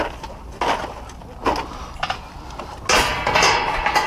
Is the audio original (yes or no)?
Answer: yes